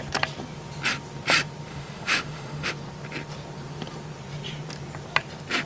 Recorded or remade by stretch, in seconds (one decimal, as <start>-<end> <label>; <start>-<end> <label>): 0.0-1.7 recorded; 1.7-2.7 remade; 2.7-5.7 recorded